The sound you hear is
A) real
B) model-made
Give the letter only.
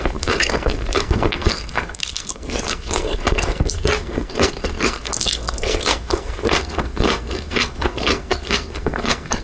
B